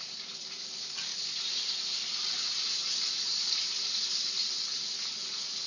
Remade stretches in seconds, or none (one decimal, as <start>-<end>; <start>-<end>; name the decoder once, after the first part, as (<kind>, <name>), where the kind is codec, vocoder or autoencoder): 1.1-4.5 (vocoder, BigVGAN v2)